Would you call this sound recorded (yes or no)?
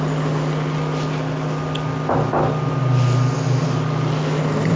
yes